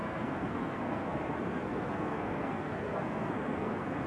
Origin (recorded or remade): remade